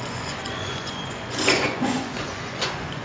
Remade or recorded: remade